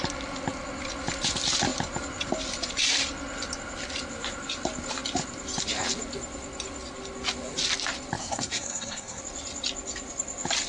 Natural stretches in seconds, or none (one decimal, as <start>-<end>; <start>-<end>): 0.0-8.2; 9.2-10.7